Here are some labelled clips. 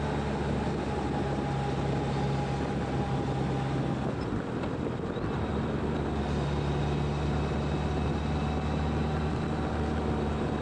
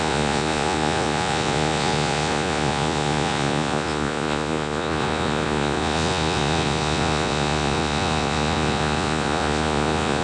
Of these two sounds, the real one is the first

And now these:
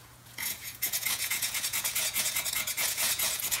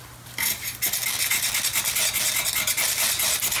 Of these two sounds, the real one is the second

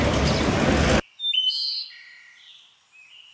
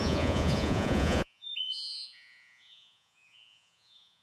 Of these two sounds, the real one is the first